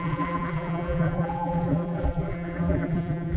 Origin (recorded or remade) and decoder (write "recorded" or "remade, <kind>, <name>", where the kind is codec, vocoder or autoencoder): remade, vocoder, BigVGAN v2